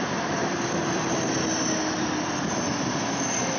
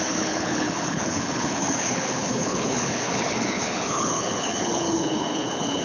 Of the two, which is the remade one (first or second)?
second